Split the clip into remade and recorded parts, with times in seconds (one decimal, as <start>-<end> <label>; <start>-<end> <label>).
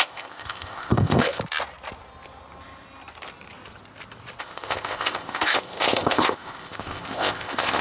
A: 0.0-1.4 remade; 1.4-4.4 recorded; 4.4-7.8 remade